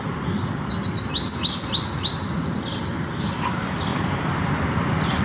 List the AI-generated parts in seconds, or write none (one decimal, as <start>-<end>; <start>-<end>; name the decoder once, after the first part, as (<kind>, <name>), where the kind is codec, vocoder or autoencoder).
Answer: none

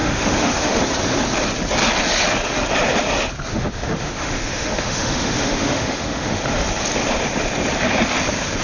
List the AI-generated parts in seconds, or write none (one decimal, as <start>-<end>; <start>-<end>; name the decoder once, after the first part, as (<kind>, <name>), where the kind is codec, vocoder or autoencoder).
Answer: 0.0-0.8 (autoencoder, DAC-VAE); 3.5-6.4

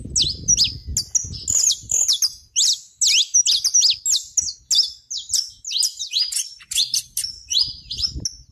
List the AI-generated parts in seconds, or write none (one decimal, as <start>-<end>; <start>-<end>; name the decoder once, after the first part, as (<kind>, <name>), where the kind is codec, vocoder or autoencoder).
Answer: none